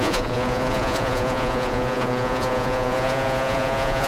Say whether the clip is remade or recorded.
remade